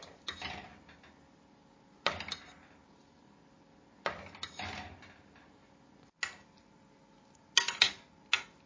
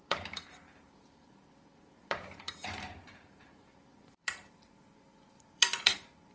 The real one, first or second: first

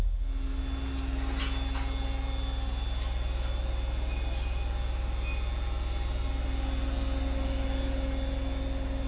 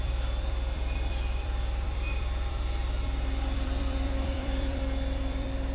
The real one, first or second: first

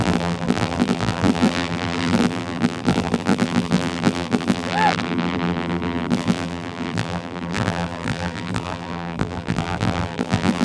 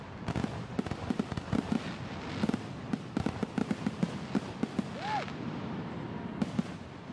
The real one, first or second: second